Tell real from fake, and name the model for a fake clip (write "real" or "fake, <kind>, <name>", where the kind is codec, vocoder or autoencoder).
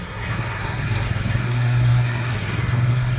fake, codec, SNAC